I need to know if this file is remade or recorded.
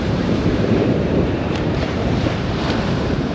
remade